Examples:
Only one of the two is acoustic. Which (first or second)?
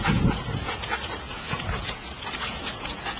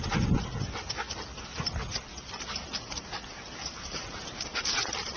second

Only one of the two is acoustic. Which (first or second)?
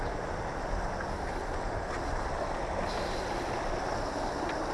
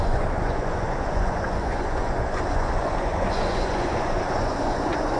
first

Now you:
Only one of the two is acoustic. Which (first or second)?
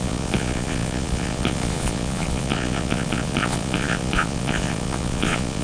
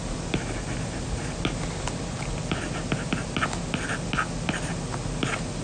second